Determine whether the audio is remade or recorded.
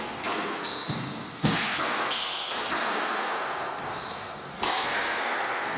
remade